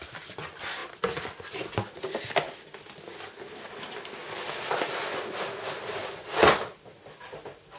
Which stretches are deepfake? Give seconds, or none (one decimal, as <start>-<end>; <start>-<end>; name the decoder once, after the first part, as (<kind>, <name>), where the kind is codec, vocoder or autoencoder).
none